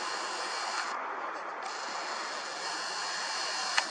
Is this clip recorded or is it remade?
recorded